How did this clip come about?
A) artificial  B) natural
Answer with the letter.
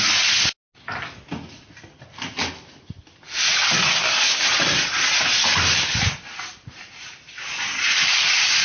B